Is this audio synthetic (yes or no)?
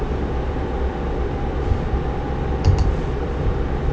yes